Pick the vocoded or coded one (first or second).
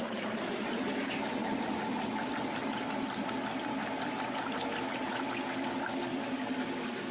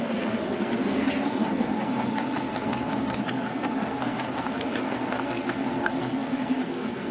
second